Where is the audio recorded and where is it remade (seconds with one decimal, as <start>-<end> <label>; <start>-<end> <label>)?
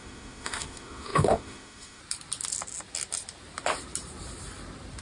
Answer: 0.0-2.0 remade; 2.0-5.0 recorded